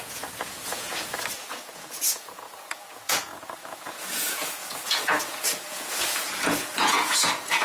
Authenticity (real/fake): fake